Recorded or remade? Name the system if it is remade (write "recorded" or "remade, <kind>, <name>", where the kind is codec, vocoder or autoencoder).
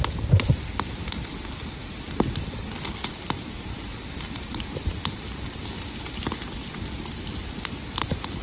recorded